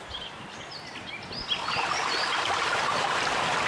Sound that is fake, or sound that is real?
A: real